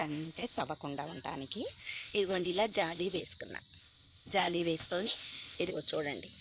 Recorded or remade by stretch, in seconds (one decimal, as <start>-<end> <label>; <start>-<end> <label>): 0.0-0.6 remade; 0.6-1.8 recorded; 1.8-3.2 remade; 3.2-3.8 recorded; 3.8-5.7 remade; 5.7-6.4 recorded